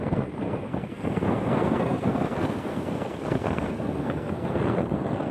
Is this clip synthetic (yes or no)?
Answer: yes